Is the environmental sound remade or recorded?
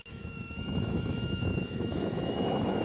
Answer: remade